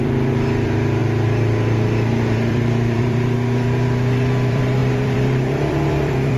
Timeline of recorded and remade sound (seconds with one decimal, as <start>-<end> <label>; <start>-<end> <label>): 0.0-6.4 remade